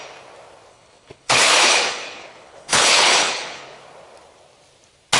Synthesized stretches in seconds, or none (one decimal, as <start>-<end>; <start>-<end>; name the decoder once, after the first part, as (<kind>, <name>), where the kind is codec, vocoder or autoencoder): 0.7-3.8 (codec, HILCodec)